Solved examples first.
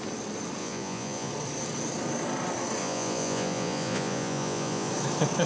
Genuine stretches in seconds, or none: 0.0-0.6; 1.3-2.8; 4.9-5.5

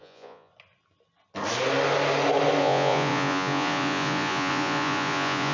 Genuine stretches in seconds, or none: 0.5-2.6

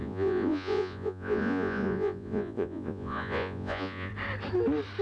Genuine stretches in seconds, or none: 4.1-5.0

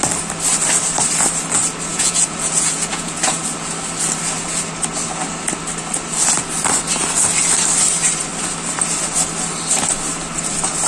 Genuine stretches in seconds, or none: 0.0-1.9; 3.2-10.9

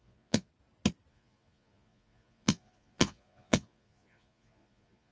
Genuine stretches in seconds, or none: 0.5-1.1

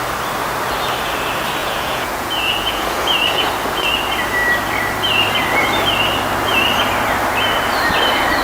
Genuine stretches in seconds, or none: 0.0-1.6; 3.5-8.4

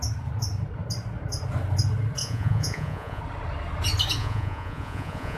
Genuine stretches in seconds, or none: 0.0-2.2; 3.2-4.2

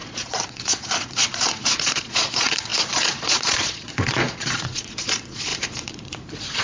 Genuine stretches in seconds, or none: none